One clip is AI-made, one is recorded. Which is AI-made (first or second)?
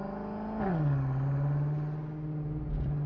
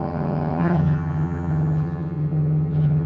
second